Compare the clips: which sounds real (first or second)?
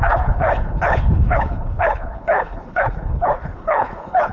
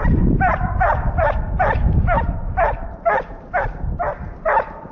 second